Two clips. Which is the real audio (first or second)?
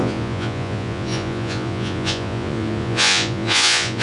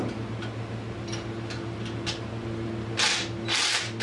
second